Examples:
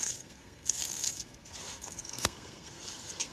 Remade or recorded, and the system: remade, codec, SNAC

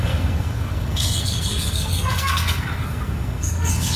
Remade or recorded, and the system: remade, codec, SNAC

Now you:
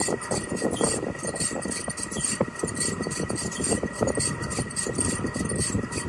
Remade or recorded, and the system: recorded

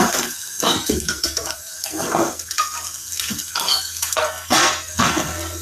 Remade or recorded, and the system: remade, codec, SNAC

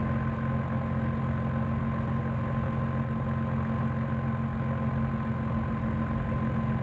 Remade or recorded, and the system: recorded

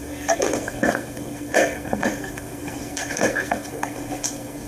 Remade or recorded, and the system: remade, codec, SNAC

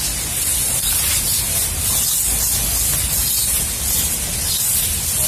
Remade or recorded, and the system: recorded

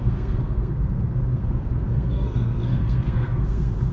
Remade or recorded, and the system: remade, codec, SNAC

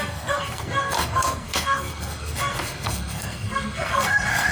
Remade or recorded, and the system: remade, codec, SNAC